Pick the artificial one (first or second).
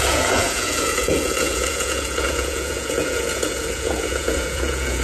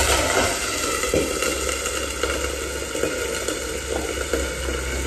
first